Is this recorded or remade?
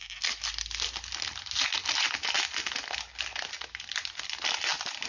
recorded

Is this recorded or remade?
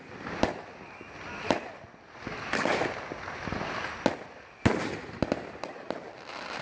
recorded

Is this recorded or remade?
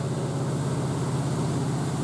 recorded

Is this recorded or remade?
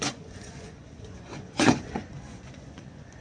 remade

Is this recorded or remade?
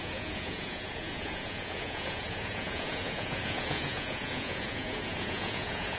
remade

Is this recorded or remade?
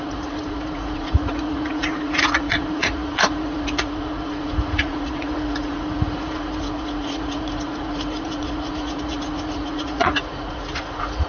remade